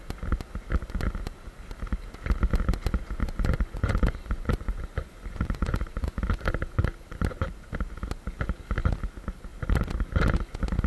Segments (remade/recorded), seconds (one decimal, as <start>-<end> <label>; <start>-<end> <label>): 0.0-3.2 recorded; 3.2-6.2 remade; 6.2-10.9 recorded